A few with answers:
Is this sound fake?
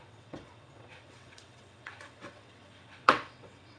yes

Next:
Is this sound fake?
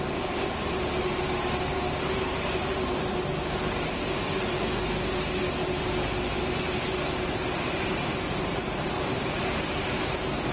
no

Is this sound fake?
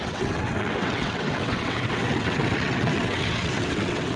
yes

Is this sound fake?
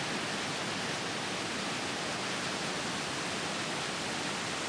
no